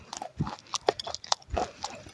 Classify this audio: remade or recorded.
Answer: recorded